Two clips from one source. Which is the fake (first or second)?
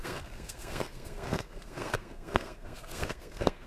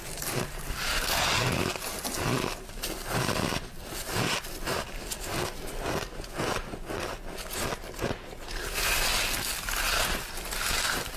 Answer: first